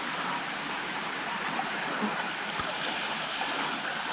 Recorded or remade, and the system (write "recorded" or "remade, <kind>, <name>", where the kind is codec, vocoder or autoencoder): recorded